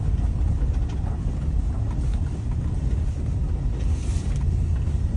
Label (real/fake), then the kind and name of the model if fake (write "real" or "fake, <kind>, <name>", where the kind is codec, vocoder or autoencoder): real